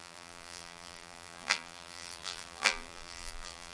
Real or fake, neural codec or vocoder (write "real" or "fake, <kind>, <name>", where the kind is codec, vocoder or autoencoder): fake, vocoder, BigVGAN v2